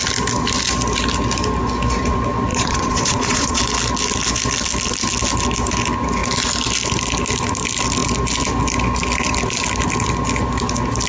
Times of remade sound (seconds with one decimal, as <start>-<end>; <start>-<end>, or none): 2.5-3.6